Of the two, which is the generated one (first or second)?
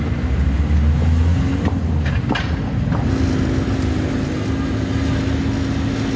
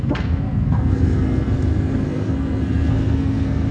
second